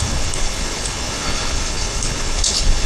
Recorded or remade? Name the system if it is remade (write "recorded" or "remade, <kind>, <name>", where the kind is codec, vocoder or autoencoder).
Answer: remade, codec, HILCodec